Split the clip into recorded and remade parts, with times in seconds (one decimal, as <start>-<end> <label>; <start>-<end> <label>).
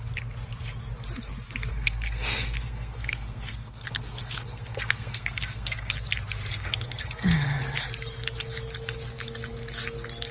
0.0-1.7 recorded; 1.7-5.9 remade; 5.9-6.5 recorded; 6.5-7.6 remade; 7.6-10.3 recorded